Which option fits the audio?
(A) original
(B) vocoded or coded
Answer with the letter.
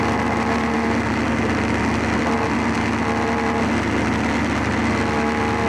A